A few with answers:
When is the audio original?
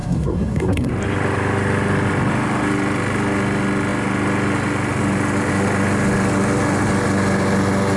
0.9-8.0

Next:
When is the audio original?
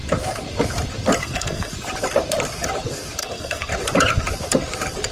0.0-1.2; 1.7-3.2; 3.7-5.1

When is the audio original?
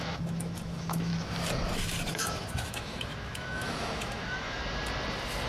1.1-2.1; 4.6-5.5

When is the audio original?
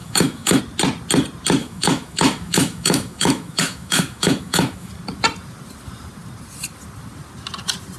0.6-1.6; 4.9-8.0